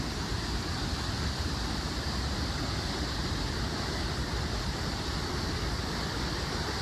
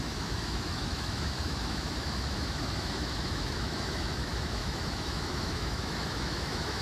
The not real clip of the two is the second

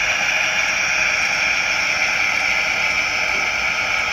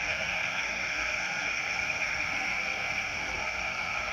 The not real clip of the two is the second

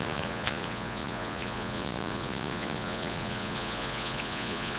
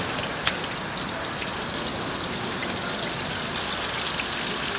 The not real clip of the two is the first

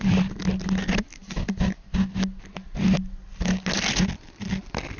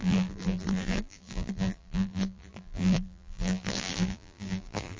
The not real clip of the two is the second